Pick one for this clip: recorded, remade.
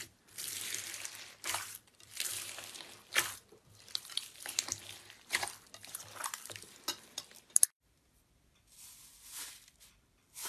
remade